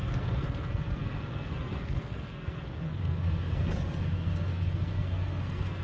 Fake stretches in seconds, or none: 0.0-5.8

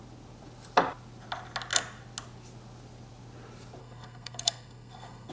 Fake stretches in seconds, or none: 3.8-5.3

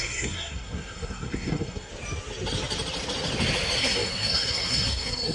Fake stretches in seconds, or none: 0.0-1.9; 3.8-5.3

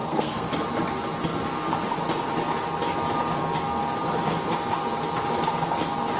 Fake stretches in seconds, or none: 0.0-0.5

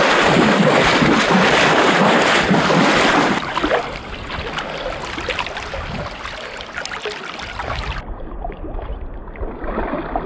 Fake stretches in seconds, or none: none

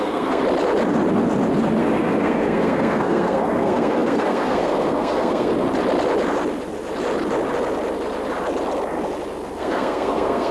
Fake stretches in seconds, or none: 0.0-0.4; 1.8-5.5; 9.6-10.5

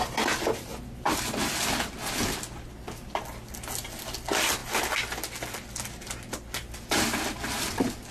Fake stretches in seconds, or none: none

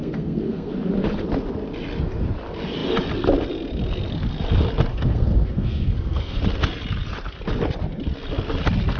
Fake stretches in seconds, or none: 0.0-0.7; 4.9-6.4